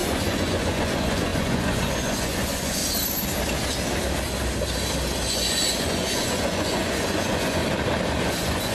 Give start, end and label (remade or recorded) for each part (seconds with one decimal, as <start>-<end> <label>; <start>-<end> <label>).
0.0-2.8 remade; 2.8-5.3 recorded; 5.3-7.6 remade; 7.6-8.1 recorded; 8.1-8.7 remade